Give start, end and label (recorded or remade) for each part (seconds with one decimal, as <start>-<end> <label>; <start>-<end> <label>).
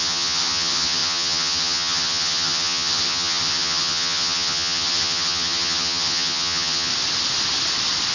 0.0-6.9 remade; 6.9-8.1 recorded